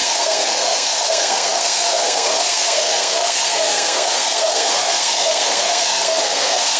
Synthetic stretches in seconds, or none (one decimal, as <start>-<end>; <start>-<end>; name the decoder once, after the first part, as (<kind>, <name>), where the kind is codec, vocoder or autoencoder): 0.0-6.8 (codec, SNAC)